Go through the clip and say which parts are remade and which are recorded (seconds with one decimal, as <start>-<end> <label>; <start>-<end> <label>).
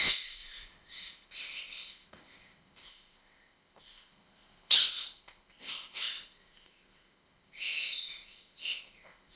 0.0-9.4 remade